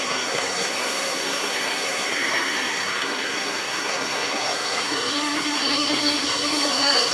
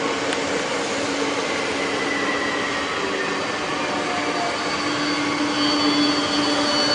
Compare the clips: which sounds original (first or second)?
second